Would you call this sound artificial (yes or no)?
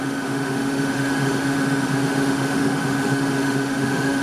yes